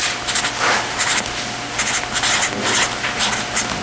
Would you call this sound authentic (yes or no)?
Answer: yes